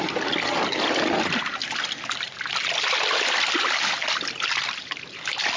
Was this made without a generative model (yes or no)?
yes